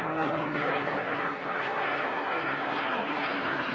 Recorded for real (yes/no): no